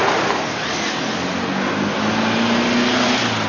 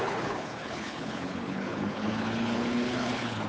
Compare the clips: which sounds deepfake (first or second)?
second